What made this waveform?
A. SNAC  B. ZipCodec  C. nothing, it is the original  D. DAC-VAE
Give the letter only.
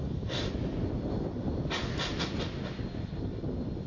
C